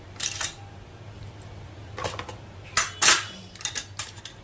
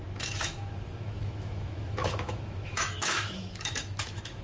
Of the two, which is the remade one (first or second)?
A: second